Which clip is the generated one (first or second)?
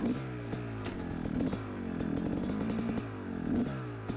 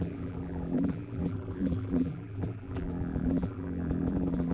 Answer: second